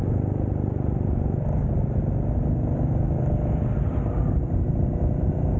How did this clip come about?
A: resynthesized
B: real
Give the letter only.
B